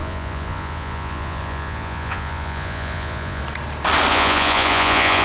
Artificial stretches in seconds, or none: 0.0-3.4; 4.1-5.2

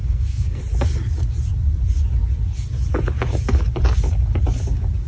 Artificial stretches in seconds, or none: 0.0-0.6

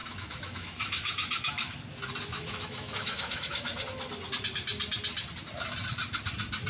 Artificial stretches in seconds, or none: 0.0-1.8; 2.3-3.8

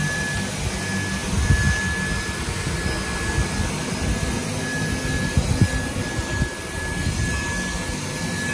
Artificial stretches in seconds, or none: none